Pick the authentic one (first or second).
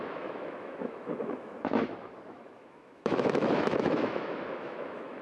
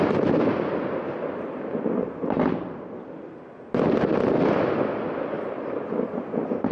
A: second